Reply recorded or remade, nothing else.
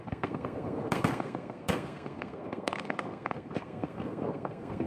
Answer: remade